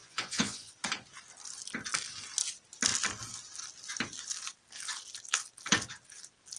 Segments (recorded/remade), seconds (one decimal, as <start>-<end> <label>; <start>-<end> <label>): 0.0-0.7 remade; 0.7-6.6 recorded